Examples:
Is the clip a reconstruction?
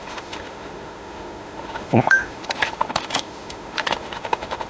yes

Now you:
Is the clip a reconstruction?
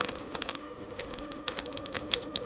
yes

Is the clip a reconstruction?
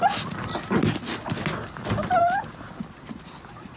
no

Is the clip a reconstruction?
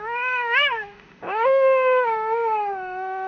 yes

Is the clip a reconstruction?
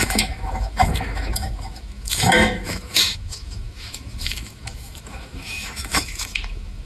yes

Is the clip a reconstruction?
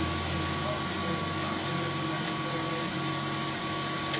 no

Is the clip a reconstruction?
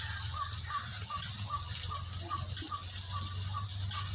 no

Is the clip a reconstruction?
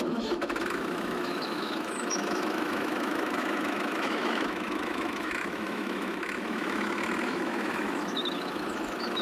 yes